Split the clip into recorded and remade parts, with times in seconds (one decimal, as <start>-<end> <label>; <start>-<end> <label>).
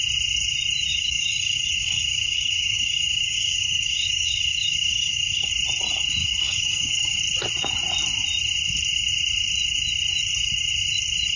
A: 0.0-0.9 recorded; 0.9-5.5 remade; 5.5-6.2 recorded; 6.2-7.2 remade; 7.2-11.4 recorded